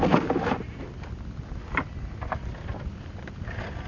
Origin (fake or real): real